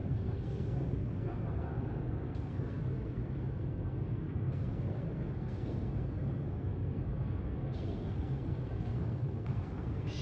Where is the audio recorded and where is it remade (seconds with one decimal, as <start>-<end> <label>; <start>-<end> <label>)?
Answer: 0.0-10.2 remade